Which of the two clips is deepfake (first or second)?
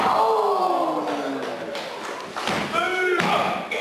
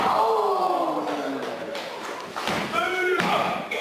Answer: second